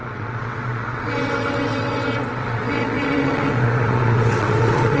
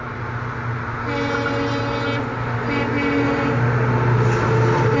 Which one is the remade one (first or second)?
first